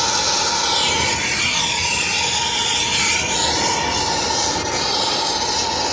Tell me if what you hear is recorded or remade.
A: recorded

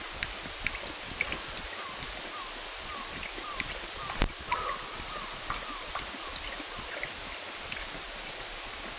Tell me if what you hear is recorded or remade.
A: recorded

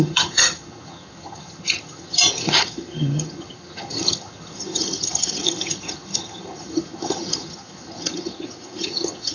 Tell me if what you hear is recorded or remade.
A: remade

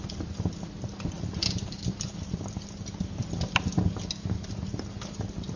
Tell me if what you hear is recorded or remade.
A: recorded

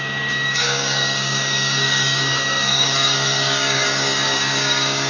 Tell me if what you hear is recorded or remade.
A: remade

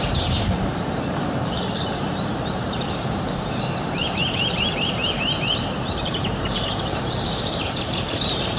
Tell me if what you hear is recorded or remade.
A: remade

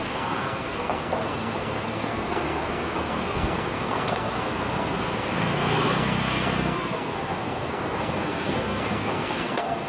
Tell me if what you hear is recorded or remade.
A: remade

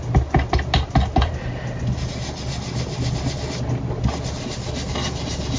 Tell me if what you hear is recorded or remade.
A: recorded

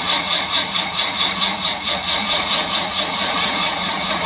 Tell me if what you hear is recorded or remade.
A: remade